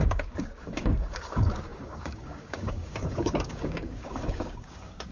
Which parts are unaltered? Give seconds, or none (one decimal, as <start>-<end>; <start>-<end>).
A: none